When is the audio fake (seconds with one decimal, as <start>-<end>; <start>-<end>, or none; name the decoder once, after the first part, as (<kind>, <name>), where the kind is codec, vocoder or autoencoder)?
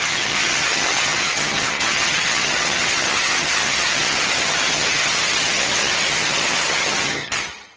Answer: 0.0-7.8 (vocoder, HiFi-GAN)